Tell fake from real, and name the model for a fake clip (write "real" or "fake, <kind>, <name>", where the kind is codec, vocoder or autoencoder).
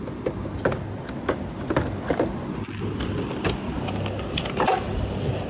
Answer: real